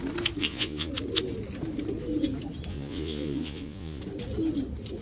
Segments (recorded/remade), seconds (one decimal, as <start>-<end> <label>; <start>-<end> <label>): 0.0-0.4 recorded; 0.4-0.9 remade; 0.9-2.7 recorded; 2.7-4.0 remade; 4.0-5.0 recorded